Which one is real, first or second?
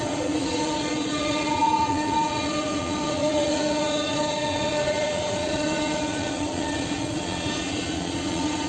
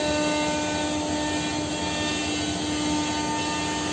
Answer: second